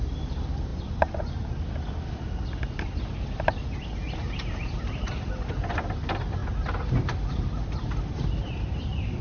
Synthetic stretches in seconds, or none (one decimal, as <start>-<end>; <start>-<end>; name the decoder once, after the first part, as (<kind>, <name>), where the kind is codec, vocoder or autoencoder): none